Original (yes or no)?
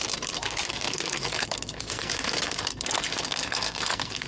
no